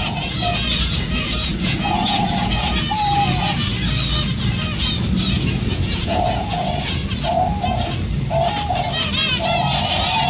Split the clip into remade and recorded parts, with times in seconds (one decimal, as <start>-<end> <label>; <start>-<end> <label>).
0.0-3.7 remade; 3.7-5.4 recorded; 5.4-7.0 remade; 7.0-10.3 recorded